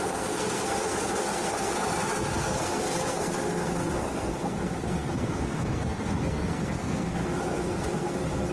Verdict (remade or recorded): remade